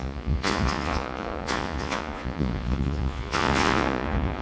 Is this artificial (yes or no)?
yes